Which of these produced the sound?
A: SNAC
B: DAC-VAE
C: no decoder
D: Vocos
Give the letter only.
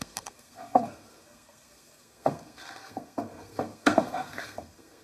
A